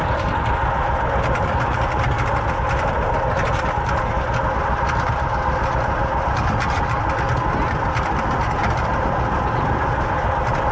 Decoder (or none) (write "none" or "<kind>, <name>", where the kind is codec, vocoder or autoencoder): none